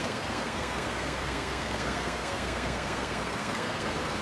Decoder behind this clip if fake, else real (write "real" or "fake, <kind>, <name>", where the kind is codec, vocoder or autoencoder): fake, codec, SNAC